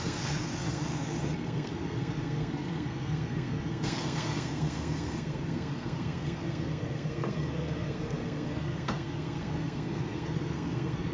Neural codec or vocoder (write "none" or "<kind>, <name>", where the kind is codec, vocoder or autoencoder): codec, SNAC